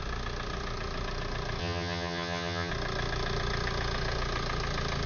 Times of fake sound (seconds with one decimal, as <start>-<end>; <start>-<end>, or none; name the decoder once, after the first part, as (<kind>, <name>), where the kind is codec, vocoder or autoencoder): 1.6-2.7 (vocoder, HiFi-GAN)